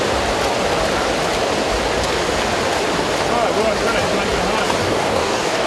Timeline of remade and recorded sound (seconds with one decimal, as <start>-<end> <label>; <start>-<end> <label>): 0.0-4.8 recorded; 4.8-5.7 remade